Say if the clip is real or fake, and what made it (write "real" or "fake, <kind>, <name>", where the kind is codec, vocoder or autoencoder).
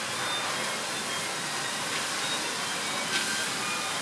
real